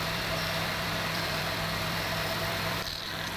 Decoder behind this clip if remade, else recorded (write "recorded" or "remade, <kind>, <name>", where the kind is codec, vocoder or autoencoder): remade, vocoder, BigVGAN v2